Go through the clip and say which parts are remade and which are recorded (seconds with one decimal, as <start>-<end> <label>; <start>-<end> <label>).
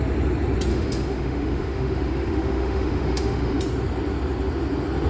0.0-0.7 recorded; 0.7-3.6 remade; 3.6-5.1 recorded